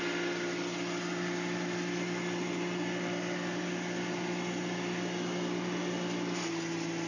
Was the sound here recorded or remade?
recorded